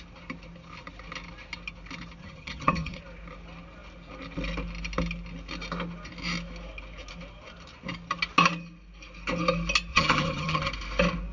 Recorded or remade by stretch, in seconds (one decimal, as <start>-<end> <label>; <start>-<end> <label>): 0.0-2.2 recorded; 2.2-3.0 remade; 3.0-9.9 recorded; 9.9-10.7 remade; 10.7-11.3 recorded